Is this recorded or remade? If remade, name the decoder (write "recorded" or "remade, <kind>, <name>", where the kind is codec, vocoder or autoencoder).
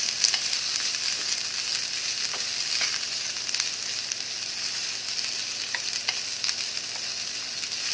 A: recorded